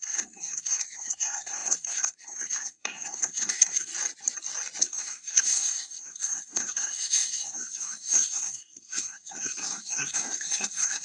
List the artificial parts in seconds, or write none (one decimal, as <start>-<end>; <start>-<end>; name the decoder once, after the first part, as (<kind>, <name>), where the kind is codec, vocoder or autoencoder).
0.0-3.9 (codec, SNAC); 4.8-11.0